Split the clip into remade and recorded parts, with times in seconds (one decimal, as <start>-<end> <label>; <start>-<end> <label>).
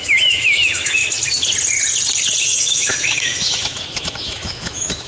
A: 0.0-1.0 remade; 1.0-2.4 recorded; 2.4-5.1 remade